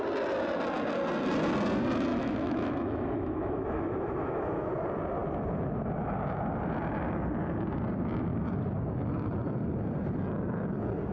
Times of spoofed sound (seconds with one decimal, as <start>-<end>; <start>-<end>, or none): 2.1-4.7